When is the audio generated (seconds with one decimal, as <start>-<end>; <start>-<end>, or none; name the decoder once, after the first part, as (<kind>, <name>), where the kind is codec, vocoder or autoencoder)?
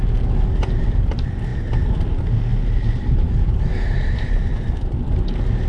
none